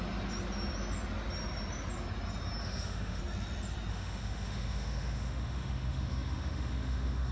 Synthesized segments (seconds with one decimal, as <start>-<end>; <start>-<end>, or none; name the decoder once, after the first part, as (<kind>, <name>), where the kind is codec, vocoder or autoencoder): 2.6-3.2 (autoencoder, DAC-VAE); 3.9-7.3